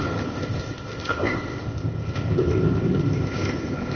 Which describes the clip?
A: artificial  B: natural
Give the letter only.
A